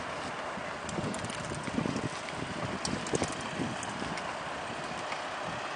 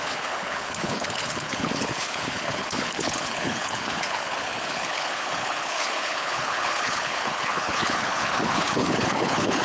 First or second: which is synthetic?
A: second